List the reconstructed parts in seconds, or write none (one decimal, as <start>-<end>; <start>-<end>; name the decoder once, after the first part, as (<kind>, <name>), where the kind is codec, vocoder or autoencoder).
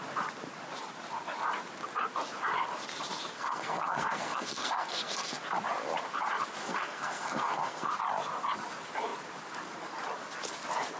3.3-5.4 (codec, SNAC); 6.6-7.9